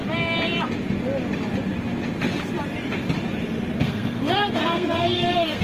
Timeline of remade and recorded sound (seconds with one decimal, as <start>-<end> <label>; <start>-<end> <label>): 0.0-3.8 recorded; 3.8-5.6 remade